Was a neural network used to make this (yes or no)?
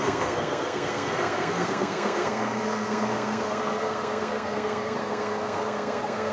yes